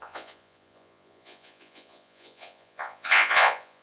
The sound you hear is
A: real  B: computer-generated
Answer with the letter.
B